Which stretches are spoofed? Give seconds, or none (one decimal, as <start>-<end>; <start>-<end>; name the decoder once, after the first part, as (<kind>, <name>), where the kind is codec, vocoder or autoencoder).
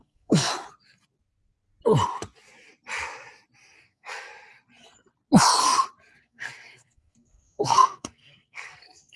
0.0-0.5 (codec, SNAC); 3.8-4.3; 6.2-9.2